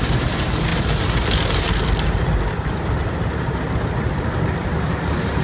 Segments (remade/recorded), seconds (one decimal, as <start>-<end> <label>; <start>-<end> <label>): 0.0-0.7 remade; 0.7-2.1 recorded; 2.1-5.4 remade